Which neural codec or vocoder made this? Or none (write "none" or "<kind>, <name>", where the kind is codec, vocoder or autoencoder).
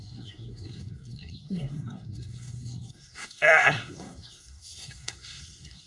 codec, SNAC